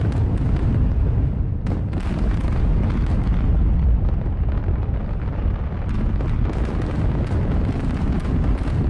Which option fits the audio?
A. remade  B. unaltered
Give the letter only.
B